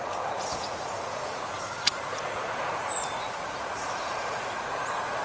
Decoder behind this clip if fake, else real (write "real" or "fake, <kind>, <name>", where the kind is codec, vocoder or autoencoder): fake, vocoder, Vocos